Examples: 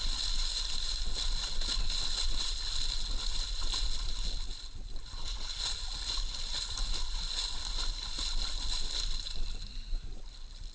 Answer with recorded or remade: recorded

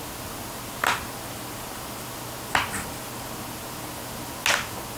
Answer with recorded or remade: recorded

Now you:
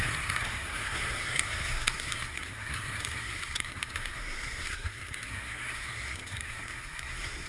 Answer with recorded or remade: remade